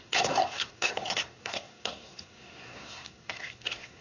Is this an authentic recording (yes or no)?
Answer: no